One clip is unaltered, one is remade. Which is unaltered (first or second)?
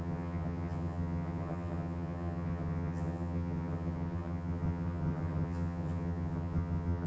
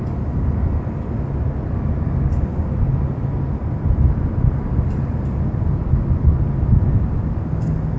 second